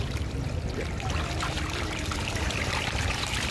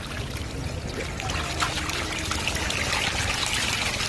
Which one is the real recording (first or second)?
second